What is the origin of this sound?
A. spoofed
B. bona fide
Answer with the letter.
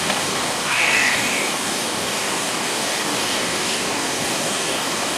A